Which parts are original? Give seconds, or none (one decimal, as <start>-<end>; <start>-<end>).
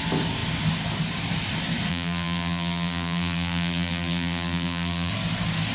0.0-1.9; 5.1-5.7